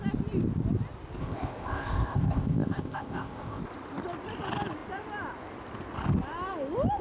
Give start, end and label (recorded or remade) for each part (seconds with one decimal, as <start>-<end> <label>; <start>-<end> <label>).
0.0-1.2 recorded; 1.2-3.6 remade; 3.6-7.0 recorded